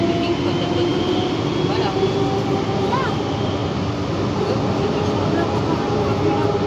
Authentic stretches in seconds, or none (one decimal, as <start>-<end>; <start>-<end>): 0.0-6.7